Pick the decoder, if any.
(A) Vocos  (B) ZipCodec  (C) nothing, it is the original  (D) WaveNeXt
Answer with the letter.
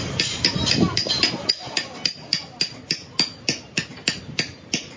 C